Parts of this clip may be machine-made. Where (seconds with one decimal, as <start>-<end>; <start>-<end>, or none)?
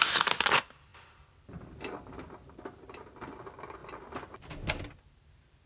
none